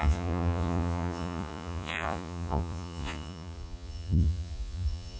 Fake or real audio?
fake